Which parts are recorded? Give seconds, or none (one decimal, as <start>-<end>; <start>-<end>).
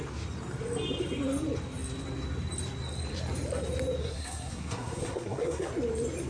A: 0.0-4.0; 5.7-6.3